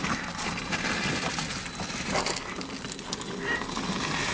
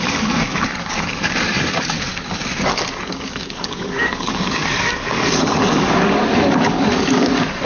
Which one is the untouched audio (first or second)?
first